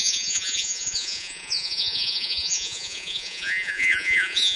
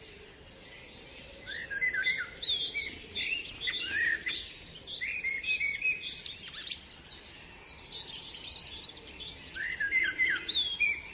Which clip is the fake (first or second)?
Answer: first